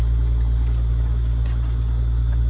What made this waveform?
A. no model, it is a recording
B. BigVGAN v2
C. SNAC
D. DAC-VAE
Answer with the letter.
A